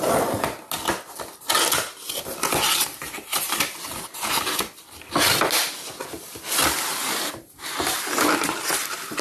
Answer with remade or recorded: recorded